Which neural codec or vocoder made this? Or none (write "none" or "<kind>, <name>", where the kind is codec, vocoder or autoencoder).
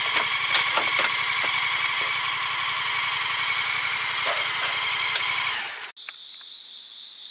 none